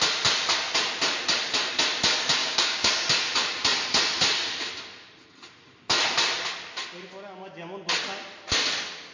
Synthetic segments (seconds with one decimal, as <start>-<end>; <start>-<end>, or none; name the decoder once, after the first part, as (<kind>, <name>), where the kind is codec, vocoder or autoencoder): 2.4-2.9 (codec, DAC)

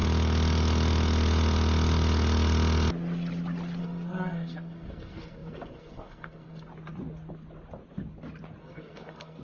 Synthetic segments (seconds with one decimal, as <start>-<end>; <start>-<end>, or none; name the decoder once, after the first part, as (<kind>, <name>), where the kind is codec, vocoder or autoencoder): 3.8-6.7 (codec, SNAC); 8.6-9.4

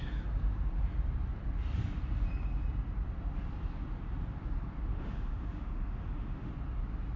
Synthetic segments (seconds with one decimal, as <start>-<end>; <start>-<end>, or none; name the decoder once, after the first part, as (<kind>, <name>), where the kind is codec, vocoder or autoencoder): 4.9-6.5 (autoencoder, DAC-VAE)

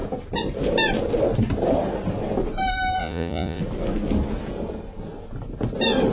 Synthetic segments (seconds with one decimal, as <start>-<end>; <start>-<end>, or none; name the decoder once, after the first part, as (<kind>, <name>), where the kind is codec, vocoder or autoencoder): 3.0-3.6 (vocoder, Vocos)

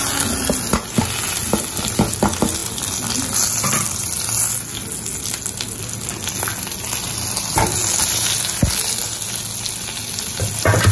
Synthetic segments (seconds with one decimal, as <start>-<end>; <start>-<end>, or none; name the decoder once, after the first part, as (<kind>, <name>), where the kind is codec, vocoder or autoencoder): none

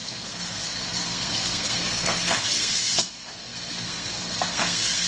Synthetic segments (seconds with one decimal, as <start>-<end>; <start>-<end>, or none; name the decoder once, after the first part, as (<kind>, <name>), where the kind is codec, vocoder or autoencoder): 0.0-5.1 (codec, SNAC)

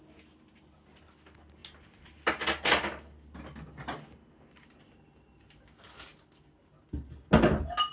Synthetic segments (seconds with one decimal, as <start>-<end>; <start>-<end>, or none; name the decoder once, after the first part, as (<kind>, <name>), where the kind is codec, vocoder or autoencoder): none

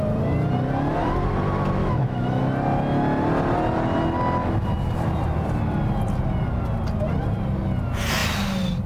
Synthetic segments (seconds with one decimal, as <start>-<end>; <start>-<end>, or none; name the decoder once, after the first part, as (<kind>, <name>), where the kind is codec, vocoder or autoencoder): 1.8-2.4 (autoencoder, DAC-VAE)